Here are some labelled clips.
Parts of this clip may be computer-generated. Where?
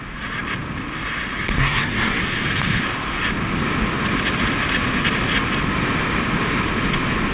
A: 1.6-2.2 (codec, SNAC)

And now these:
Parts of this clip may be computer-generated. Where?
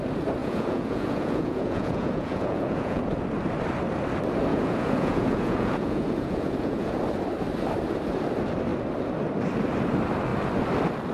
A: 0.4-3.0 (vocoder, Vocos); 4.5-6.9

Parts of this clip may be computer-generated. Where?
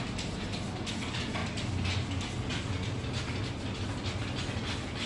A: none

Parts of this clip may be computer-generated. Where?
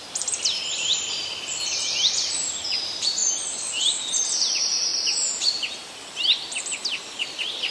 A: 0.0-3.2 (vocoder, BigVGAN v2); 4.4-7.7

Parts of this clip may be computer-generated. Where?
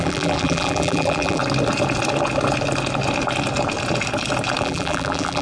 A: 0.0-1.4 (vocoder, BigVGAN v2); 4.6-5.4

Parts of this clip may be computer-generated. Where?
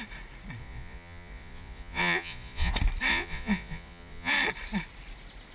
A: 0.6-2.7 (vocoder, Vocos); 3.1-4.3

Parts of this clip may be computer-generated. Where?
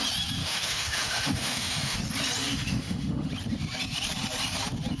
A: 0.4-2.0 (autoencoder, DAC-VAE); 2.5-3.3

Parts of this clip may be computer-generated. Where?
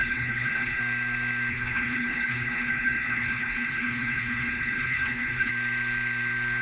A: 0.0-0.8 (codec, HILCodec); 1.5-5.5